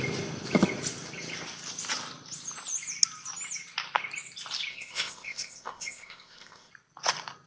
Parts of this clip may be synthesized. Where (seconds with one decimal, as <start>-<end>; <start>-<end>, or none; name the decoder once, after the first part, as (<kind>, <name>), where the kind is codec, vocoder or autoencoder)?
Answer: 4.7-6.7 (codec, ZipCodec)